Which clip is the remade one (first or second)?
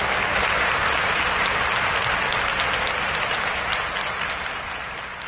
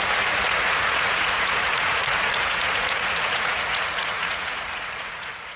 second